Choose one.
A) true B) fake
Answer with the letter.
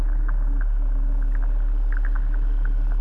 A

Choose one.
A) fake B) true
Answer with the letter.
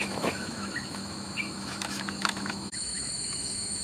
A